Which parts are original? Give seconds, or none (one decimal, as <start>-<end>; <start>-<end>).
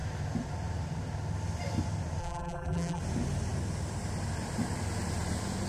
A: 0.0-2.2; 3.0-5.7